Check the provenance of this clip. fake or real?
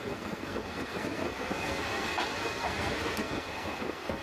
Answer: fake